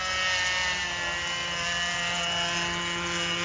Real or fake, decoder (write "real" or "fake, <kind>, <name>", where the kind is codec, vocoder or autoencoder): real